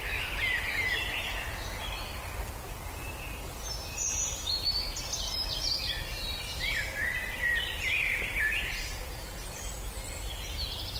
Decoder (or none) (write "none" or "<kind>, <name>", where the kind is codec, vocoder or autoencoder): none